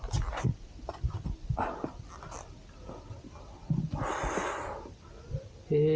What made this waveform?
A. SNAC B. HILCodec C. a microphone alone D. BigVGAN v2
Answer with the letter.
C